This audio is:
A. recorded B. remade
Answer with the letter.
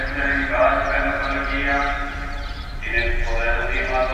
A